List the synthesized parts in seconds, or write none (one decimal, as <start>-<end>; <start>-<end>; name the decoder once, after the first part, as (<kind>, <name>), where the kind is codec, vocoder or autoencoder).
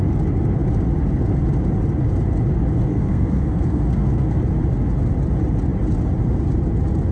2.9-4.4 (codec, SNAC)